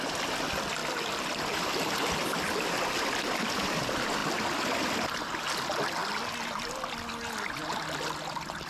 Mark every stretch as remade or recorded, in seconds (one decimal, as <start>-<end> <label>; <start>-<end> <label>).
0.0-8.7 recorded